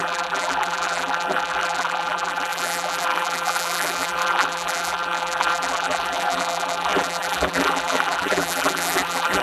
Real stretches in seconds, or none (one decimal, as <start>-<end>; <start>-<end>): none